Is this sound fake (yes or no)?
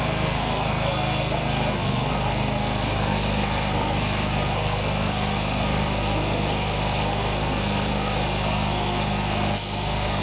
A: yes